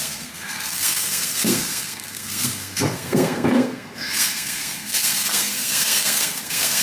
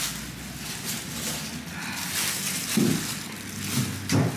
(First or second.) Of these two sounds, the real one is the second